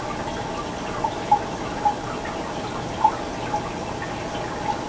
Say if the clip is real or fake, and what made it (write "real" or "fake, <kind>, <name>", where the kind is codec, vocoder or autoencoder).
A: real